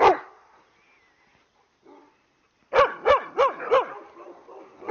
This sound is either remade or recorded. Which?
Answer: recorded